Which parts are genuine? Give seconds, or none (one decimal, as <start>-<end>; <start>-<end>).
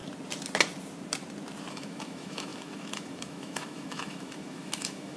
0.0-1.7